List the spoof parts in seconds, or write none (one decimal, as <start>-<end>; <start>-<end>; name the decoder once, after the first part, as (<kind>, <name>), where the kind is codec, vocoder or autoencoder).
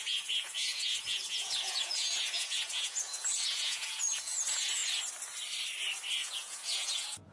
0.0-4.8 (vocoder, Vocos); 6.2-7.3